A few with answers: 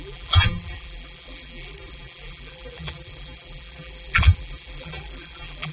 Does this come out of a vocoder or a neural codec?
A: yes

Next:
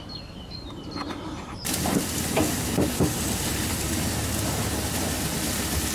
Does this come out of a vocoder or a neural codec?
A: no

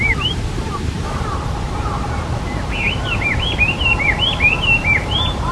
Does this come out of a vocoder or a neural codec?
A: yes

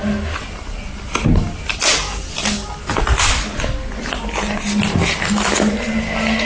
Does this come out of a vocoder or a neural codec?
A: no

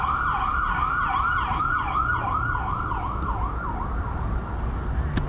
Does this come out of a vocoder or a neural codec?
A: no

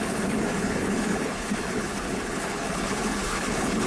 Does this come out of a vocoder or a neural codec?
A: yes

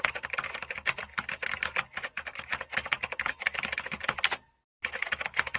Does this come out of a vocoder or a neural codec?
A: no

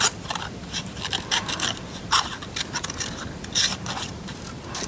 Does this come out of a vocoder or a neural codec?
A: yes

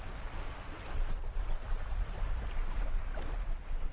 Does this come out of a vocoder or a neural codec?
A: no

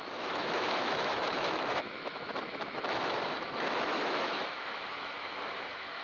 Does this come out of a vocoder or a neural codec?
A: yes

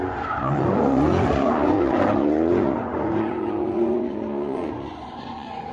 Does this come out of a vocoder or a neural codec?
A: yes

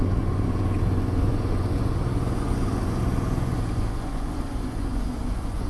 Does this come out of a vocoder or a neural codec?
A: yes